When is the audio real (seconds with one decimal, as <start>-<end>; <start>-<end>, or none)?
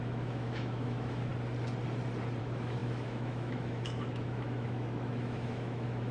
1.3-2.4